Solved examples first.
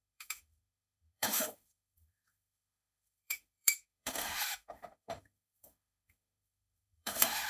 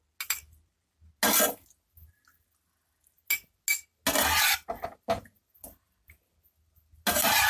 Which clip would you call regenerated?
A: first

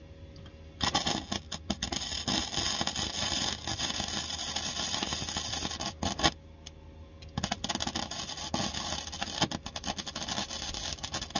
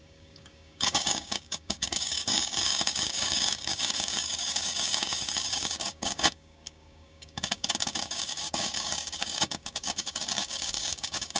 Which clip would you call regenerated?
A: second